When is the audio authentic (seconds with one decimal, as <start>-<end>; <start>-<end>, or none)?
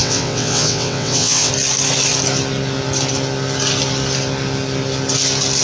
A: 1.5-5.6